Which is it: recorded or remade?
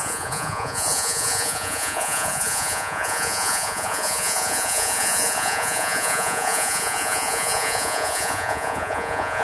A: remade